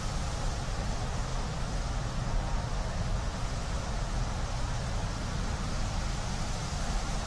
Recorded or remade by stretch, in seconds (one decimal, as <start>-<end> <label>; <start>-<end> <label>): 0.0-7.3 recorded